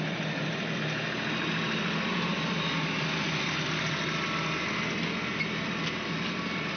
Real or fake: real